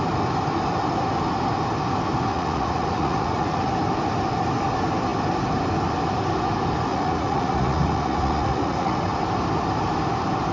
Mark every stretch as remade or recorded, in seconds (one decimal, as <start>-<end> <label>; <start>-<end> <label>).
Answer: 0.0-2.3 recorded; 2.3-3.7 remade; 3.7-6.9 recorded; 6.9-9.0 remade; 9.0-10.5 recorded